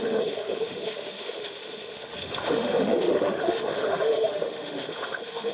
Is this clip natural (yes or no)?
no